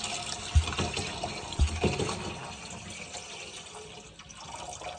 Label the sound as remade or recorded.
recorded